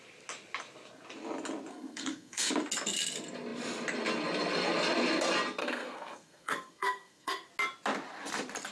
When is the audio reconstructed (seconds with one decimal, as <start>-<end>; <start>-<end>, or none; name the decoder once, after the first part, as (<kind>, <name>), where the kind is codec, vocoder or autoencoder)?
1.7-2.5 (codec, SNAC); 5.6-7.5